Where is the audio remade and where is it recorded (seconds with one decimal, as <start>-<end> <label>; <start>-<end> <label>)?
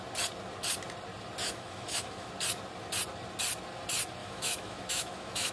0.0-1.4 recorded; 1.4-2.3 remade; 2.3-4.2 recorded; 4.2-5.5 remade